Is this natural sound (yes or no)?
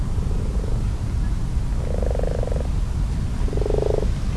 yes